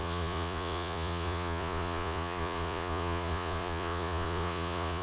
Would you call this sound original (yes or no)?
no